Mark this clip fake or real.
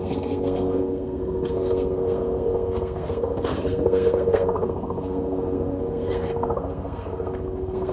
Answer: fake